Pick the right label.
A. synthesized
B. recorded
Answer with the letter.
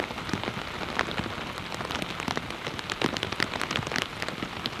B